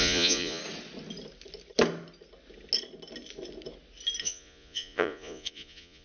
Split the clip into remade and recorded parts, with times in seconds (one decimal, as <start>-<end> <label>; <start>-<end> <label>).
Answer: 0.0-0.6 remade; 0.6-4.2 recorded; 4.2-6.0 remade